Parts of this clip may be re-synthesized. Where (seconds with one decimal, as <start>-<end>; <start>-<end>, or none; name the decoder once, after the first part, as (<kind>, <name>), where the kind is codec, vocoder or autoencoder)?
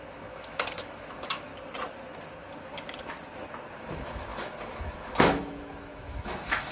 0.0-1.5 (autoencoder, DAC-VAE); 3.8-6.7